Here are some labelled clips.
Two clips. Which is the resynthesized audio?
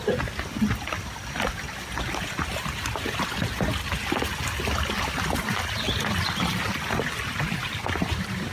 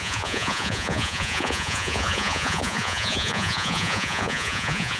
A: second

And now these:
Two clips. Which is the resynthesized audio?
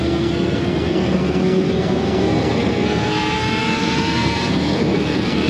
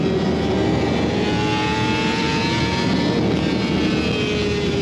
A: first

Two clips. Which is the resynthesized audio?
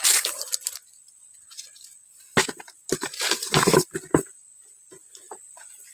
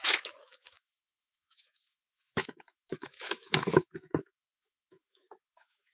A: second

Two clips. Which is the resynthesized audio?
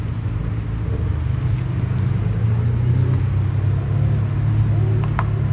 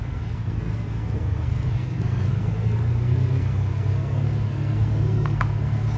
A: second